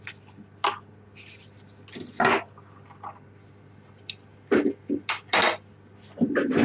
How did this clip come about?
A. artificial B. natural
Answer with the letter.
B